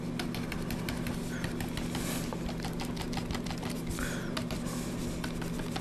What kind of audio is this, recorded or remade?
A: recorded